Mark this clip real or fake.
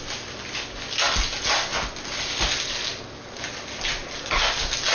real